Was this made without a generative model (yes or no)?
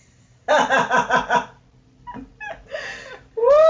yes